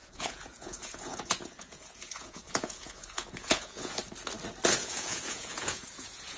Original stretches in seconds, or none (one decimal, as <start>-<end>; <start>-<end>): 4.0-4.8